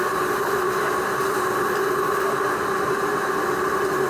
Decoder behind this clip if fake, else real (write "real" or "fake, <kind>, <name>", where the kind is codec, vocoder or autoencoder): real